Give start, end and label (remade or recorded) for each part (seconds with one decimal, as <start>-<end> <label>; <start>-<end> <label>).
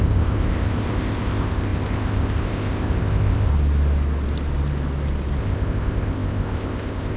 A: 0.0-3.5 remade; 3.5-5.4 recorded; 5.4-7.2 remade